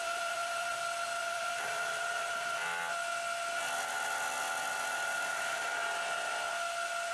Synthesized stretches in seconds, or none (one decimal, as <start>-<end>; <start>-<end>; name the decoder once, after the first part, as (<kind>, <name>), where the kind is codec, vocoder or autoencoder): 0.0-0.7 (vocoder, BigVGAN v2); 1.2-2.6; 4.9-5.8